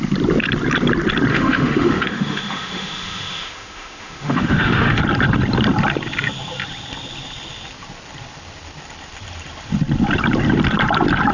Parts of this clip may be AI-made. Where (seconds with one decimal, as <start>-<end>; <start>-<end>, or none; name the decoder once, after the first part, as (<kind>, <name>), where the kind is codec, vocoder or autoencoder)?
1.3-5.0 (autoencoder, DAC-VAE)